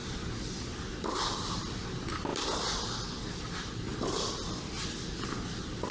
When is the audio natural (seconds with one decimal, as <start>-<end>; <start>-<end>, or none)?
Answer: 0.0-5.9